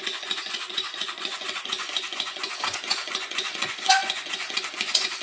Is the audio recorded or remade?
remade